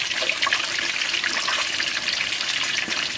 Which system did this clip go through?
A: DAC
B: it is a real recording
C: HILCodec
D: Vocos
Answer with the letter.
B